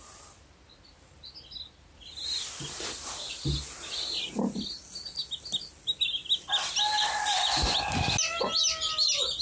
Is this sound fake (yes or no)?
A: no